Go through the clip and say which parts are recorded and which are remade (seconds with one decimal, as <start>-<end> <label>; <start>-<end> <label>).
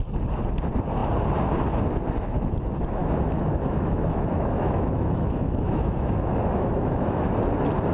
0.0-3.0 recorded; 3.0-7.3 remade; 7.3-7.9 recorded